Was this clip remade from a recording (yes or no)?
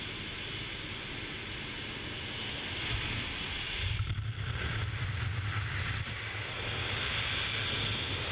no